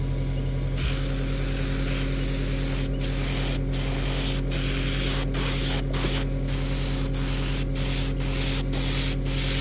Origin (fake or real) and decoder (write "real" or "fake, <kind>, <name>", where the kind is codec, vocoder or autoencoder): real